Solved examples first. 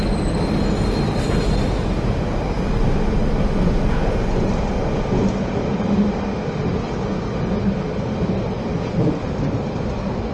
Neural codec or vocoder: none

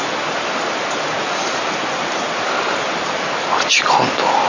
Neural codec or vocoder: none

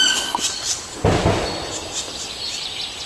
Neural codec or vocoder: none